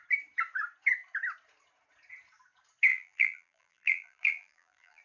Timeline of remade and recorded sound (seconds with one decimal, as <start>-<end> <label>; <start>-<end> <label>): 0.0-2.9 recorded; 2.9-5.0 remade